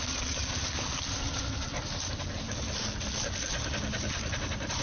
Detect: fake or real real